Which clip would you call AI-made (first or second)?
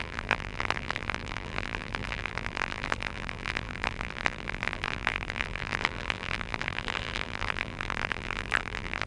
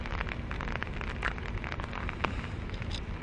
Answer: first